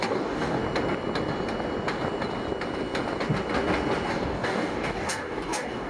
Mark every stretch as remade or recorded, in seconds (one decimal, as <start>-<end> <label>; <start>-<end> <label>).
0.0-0.6 remade; 0.6-4.1 recorded; 4.1-5.9 remade

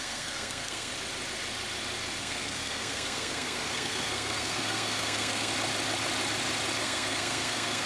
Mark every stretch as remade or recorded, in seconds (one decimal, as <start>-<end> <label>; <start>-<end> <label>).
0.0-0.9 remade; 0.9-2.2 recorded; 2.2-5.5 remade; 5.5-6.8 recorded; 6.8-7.9 remade

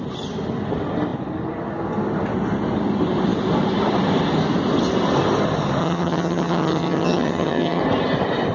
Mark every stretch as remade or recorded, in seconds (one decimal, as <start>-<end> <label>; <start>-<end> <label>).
0.0-5.8 recorded; 5.8-7.8 remade; 7.8-8.5 recorded

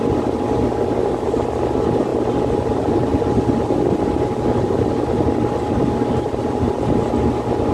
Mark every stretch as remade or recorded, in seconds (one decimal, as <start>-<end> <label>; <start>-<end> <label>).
0.0-7.7 recorded

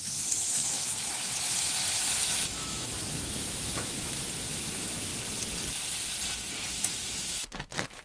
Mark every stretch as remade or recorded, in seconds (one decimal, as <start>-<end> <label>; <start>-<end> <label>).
0.0-5.1 remade; 5.1-6.7 recorded; 6.7-8.0 remade

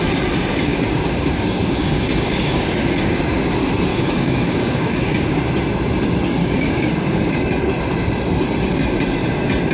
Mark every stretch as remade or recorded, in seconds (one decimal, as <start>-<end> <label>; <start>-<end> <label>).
0.0-0.7 recorded; 0.7-3.2 remade; 3.2-3.9 recorded; 3.9-5.4 remade; 5.4-6.4 recorded; 6.4-7.5 remade; 7.5-9.7 recorded

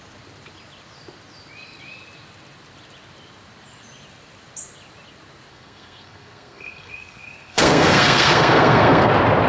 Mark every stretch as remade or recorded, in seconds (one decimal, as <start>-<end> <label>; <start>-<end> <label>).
0.0-5.5 recorded; 5.5-9.1 remade; 9.1-9.5 recorded